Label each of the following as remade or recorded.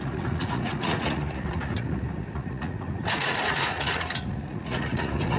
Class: remade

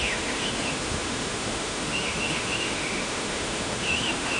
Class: remade